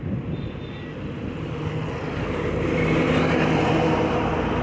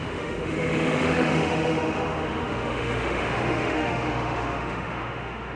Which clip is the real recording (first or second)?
first